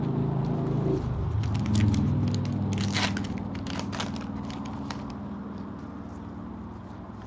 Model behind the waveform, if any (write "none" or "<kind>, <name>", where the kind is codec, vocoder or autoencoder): none